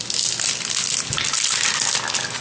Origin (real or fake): real